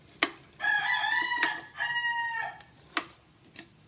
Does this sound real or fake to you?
real